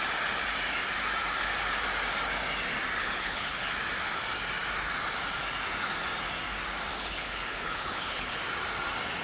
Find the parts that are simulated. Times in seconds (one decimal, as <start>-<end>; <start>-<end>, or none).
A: 3.0-3.7; 6.9-8.4